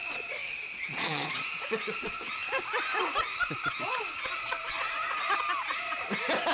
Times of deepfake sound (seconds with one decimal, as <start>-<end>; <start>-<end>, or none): 0.0-2.3